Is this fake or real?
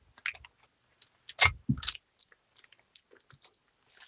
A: real